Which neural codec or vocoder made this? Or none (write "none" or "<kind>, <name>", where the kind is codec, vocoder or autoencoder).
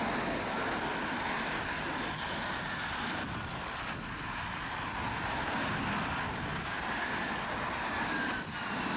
none